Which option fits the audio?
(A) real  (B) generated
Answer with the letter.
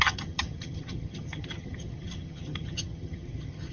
B